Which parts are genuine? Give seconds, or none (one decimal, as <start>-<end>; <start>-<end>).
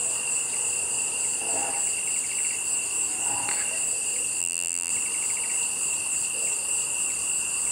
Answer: 0.0-4.4; 4.9-7.7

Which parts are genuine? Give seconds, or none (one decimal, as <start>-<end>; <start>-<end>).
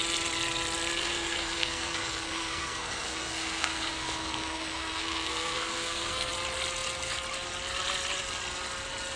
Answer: 0.0-1.0; 6.3-9.2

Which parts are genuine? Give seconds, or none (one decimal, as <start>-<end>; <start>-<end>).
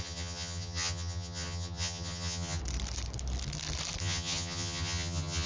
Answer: 2.6-4.0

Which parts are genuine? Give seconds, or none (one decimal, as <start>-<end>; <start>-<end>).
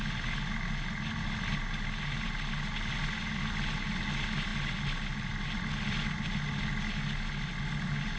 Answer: 0.0-8.2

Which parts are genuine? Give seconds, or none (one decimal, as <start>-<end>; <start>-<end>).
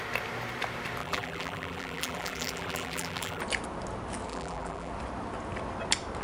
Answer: 0.0-1.0; 3.4-4.3; 4.9-6.2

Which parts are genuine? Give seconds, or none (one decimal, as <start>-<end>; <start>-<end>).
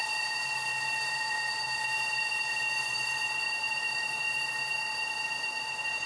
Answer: none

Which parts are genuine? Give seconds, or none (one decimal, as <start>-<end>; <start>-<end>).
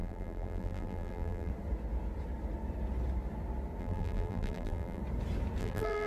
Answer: 1.5-3.8; 5.0-5.6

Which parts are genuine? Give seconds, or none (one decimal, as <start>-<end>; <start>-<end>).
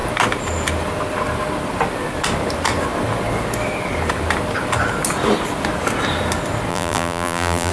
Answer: 0.0-6.7